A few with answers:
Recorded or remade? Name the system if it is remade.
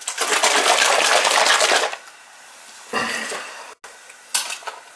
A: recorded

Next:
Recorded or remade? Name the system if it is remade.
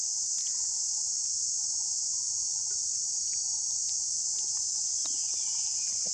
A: recorded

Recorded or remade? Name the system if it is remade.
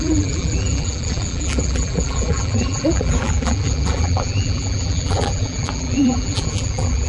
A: remade, vocoder, BigVGAN v2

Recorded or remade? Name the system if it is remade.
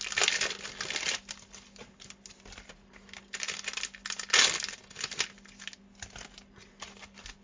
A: recorded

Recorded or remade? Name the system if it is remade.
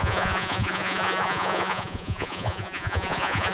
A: remade, vocoder, Vocos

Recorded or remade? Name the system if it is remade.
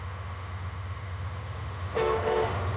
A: remade, autoencoder, DAC-VAE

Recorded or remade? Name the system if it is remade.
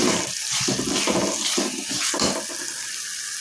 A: remade, vocoder, BigVGAN v2